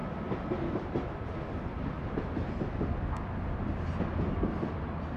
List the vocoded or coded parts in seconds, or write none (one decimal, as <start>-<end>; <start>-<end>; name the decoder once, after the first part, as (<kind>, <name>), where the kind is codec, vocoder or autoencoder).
none